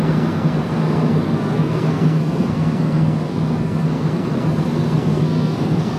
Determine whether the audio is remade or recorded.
remade